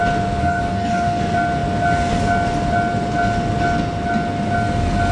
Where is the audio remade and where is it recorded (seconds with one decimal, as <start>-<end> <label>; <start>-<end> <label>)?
0.0-0.4 recorded; 0.4-1.2 remade; 1.2-5.1 recorded